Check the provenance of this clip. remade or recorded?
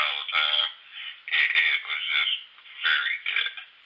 recorded